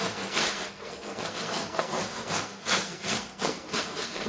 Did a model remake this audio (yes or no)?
yes